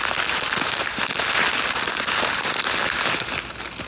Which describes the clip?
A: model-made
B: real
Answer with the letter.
B